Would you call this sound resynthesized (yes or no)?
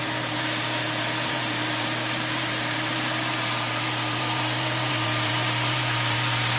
yes